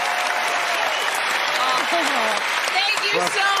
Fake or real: fake